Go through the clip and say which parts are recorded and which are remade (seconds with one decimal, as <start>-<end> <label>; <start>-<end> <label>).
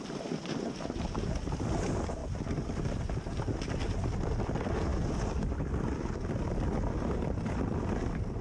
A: 0.0-8.4 recorded